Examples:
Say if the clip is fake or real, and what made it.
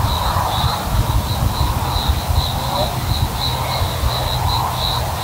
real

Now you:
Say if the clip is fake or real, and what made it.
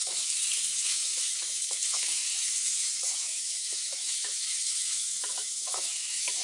fake, autoencoder, DAC-VAE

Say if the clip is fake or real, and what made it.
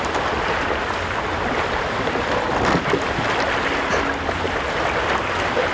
real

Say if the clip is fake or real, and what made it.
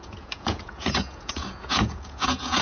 fake, vocoder, Vocos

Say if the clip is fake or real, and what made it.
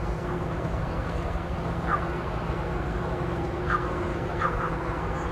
fake, codec, SNAC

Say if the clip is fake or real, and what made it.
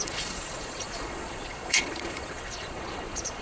fake, vocoder, Vocos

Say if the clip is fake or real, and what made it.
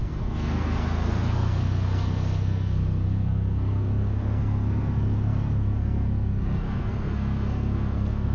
fake, codec, SNAC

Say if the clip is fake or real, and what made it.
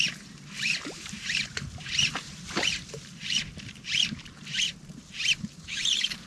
fake, vocoder, BigVGAN v2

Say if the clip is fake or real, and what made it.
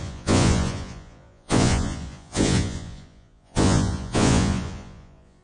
fake, vocoder, Vocos